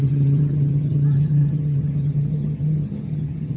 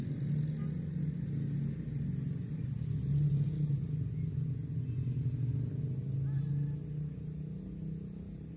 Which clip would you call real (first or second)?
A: second